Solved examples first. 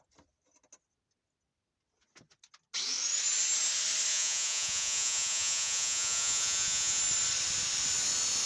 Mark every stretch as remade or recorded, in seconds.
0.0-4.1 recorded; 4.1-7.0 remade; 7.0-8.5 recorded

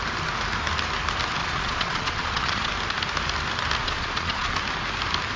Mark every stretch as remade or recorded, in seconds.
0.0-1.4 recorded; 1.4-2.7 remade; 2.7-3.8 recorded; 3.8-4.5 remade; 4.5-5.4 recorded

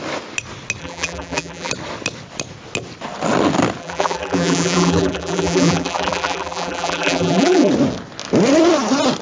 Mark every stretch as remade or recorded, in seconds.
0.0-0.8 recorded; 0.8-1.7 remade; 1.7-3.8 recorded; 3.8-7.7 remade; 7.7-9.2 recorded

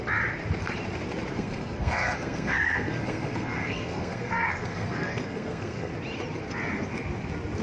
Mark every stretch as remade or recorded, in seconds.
0.0-1.3 recorded; 1.3-5.9 remade; 5.9-7.6 recorded

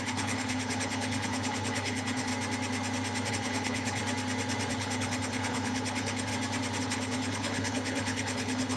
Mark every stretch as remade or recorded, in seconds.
0.0-2.3 remade; 2.3-3.3 recorded; 3.3-4.0 remade; 4.0-4.7 recorded; 4.7-6.3 remade; 6.3-6.8 recorded; 6.8-8.8 remade

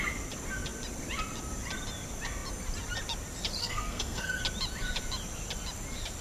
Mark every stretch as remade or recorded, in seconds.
0.0-3.6 recorded; 3.6-4.4 remade; 4.4-6.2 recorded

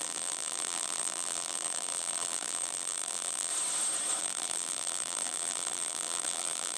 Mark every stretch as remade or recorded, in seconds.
0.0-3.5 remade; 3.5-4.2 recorded; 4.2-6.8 remade